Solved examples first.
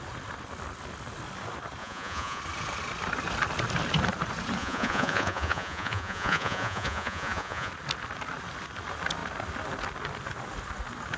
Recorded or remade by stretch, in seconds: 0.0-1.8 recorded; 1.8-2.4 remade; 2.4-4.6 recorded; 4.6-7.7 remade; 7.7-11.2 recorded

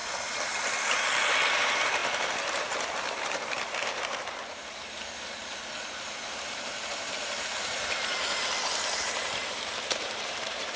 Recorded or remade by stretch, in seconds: 0.0-1.5 recorded; 1.5-10.8 remade

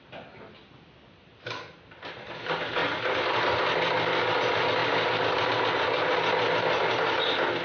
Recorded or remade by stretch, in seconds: 0.0-7.6 recorded

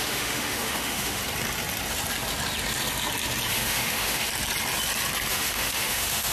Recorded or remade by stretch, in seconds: 0.0-1.2 remade; 1.2-3.5 recorded; 3.5-4.3 remade; 4.3-5.3 recorded; 5.3-6.3 remade